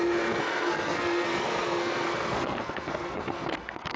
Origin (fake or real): fake